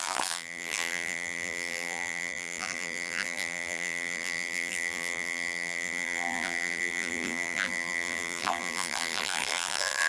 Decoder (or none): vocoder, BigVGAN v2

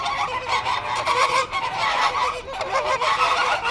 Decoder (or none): vocoder, BigVGAN v2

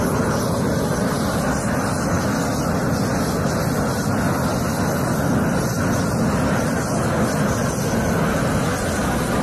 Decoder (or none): none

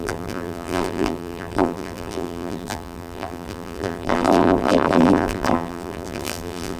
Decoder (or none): vocoder, BigVGAN v2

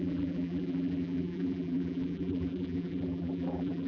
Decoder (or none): vocoder, BigVGAN v2